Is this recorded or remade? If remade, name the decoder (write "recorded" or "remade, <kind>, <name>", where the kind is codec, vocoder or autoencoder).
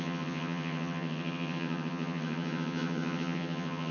remade, vocoder, HiFi-GAN